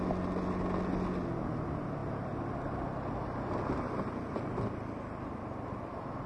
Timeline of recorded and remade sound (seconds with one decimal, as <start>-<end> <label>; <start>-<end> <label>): 0.0-6.3 recorded